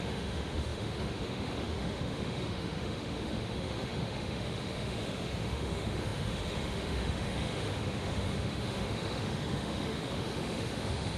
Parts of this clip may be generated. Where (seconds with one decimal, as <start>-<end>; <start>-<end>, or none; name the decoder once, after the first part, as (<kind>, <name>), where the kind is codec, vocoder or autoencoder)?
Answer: 0.0-11.2 (autoencoder, DAC-VAE)